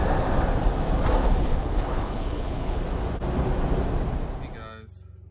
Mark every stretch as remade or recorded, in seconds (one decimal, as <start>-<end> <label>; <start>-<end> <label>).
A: 0.0-1.2 recorded; 1.2-2.8 remade; 2.8-5.3 recorded